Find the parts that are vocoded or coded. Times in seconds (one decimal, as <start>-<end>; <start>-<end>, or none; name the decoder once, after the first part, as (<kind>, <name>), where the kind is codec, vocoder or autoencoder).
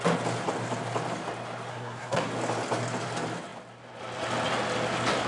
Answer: 1.7-2.3 (codec, SNAC)